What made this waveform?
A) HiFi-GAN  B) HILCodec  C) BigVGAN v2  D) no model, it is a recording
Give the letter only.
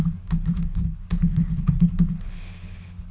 B